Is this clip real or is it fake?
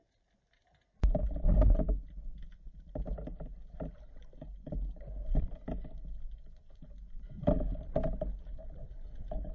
real